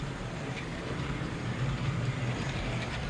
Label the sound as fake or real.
real